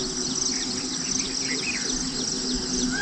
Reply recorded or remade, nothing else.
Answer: recorded